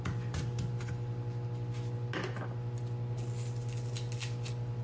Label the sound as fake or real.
real